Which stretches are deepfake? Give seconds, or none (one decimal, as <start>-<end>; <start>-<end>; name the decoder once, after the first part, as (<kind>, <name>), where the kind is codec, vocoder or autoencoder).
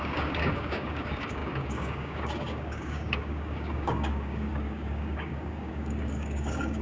0.0-6.8 (codec, DAC)